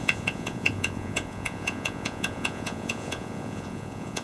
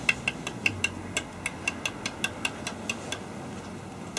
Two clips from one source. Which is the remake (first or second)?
first